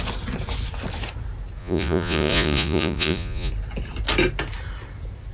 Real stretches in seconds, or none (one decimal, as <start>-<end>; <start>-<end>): 0.0-1.6; 3.5-5.3